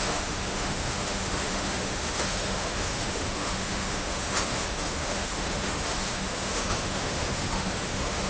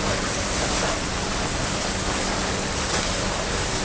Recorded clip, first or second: second